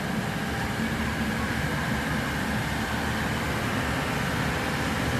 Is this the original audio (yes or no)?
yes